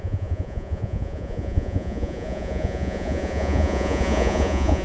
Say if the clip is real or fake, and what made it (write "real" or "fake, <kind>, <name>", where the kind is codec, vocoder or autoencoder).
fake, vocoder, Vocos